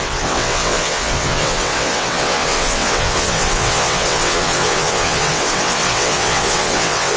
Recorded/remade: remade